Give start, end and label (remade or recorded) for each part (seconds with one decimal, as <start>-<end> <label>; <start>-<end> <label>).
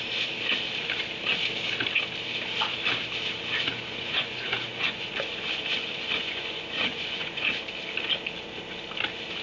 0.0-3.7 recorded; 3.7-7.4 remade; 7.4-9.4 recorded